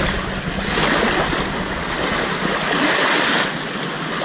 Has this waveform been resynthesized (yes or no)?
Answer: no